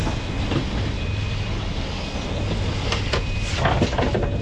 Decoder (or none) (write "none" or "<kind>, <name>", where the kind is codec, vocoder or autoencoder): none